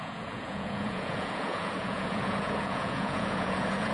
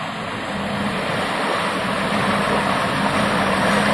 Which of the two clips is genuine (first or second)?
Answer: second